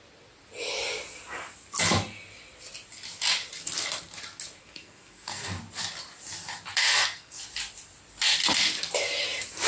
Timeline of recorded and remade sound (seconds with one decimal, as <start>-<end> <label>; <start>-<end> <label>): 0.0-4.6 recorded; 4.6-5.6 remade; 5.6-6.8 recorded; 6.8-7.4 remade; 7.4-9.7 recorded